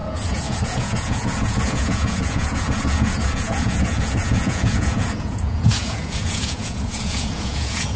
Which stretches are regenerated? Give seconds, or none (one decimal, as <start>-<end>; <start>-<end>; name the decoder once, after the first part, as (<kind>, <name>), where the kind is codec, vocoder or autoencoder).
0.0-8.0 (vocoder, Vocos)